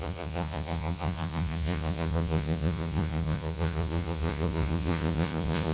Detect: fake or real fake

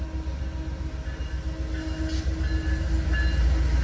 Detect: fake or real real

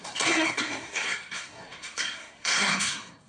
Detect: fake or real fake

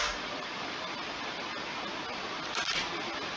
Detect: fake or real real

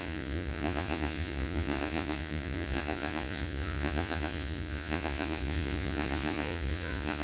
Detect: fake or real fake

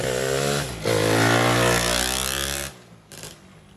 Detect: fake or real real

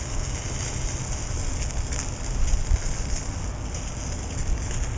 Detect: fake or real real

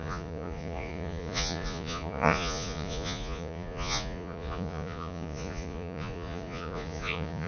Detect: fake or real fake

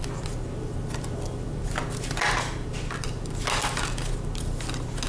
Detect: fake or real real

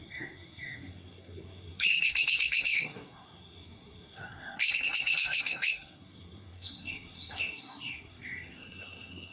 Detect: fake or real fake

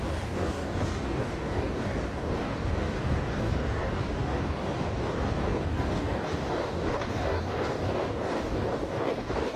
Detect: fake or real fake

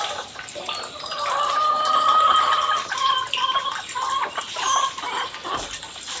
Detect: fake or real real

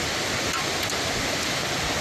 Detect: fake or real real